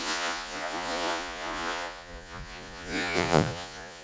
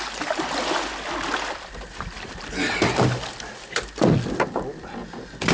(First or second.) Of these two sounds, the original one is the second